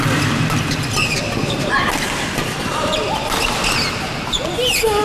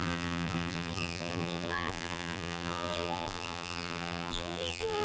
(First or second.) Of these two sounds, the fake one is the second